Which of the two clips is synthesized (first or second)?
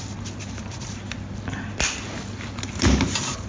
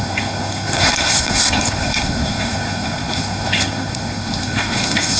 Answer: second